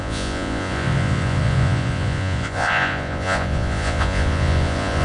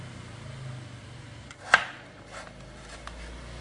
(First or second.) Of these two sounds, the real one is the second